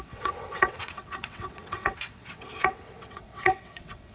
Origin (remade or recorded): remade